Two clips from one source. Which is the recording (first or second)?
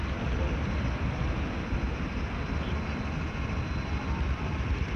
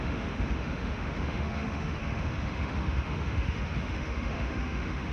first